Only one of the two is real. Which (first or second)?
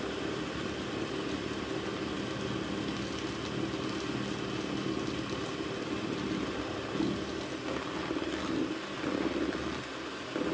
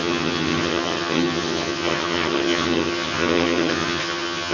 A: first